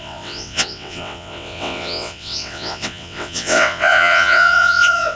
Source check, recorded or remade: remade